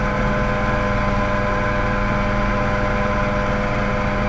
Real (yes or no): yes